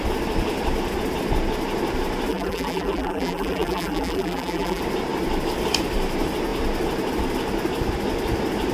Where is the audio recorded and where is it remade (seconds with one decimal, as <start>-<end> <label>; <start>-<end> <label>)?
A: 0.0-2.3 recorded; 2.3-4.8 remade; 4.8-8.7 recorded